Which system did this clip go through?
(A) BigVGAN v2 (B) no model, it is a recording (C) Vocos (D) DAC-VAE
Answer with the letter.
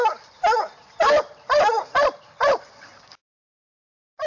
B